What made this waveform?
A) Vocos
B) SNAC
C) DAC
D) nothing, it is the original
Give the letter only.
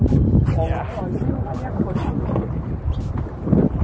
D